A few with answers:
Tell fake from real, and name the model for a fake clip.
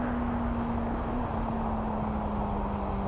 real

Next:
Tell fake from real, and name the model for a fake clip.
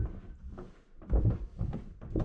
fake, vocoder, BigVGAN v2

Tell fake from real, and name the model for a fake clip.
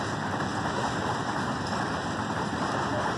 real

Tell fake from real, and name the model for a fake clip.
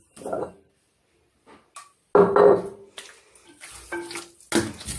real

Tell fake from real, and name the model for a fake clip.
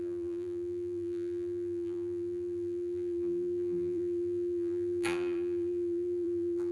fake, vocoder, BigVGAN v2